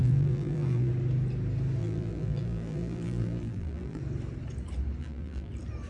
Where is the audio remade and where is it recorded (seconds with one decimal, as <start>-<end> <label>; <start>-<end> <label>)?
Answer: 0.0-0.9 remade; 0.9-1.8 recorded; 1.8-4.0 remade; 4.0-5.0 recorded; 5.0-5.5 remade; 5.5-5.9 recorded